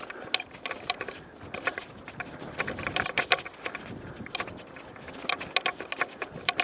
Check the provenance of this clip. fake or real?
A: real